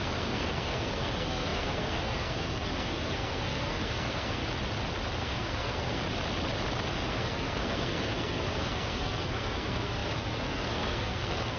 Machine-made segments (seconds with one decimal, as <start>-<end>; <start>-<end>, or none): 0.0-4.4; 5.2-6.0; 6.9-11.6

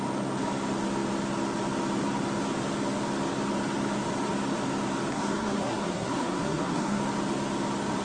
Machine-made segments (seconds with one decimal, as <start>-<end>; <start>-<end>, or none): 5.1-7.0

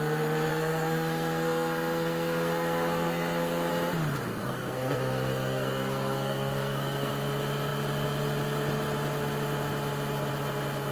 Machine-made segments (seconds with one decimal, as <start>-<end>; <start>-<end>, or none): 0.5-3.7; 4.3-7.1

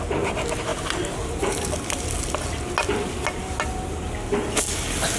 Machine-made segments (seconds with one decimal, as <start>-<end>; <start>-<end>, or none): none

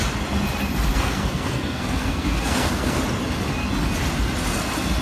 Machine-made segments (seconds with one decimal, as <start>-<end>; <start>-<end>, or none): 0.9-3.0

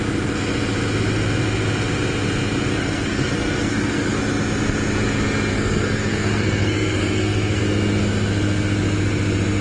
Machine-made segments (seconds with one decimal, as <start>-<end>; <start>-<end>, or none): 2.7-4.2; 5.5-7.6